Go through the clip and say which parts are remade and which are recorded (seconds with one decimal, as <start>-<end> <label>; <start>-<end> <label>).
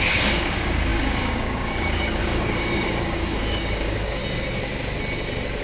0.0-4.2 remade; 4.2-5.6 recorded